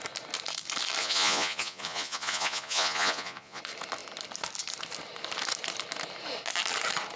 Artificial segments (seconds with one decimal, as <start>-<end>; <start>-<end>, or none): 1.0-3.6